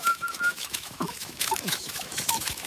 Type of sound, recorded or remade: remade